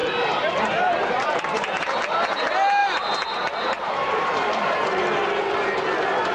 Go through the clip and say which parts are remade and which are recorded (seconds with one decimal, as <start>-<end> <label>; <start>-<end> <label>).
0.0-1.8 remade; 1.8-2.8 recorded; 2.8-4.5 remade; 4.5-6.3 recorded

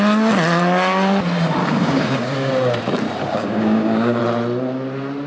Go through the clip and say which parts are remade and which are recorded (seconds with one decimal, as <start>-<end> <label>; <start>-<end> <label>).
0.0-1.6 recorded; 1.6-2.5 remade; 2.5-3.2 recorded; 3.2-4.2 remade; 4.2-5.3 recorded